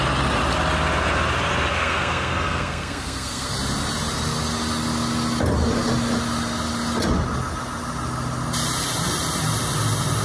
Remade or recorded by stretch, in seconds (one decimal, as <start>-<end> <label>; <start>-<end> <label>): 0.0-1.7 recorded; 1.7-3.5 remade; 3.5-10.2 recorded